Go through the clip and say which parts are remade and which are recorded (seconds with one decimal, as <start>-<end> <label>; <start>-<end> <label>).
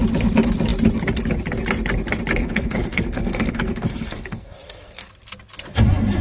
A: 0.0-2.4 recorded; 2.4-5.1 remade; 5.1-6.2 recorded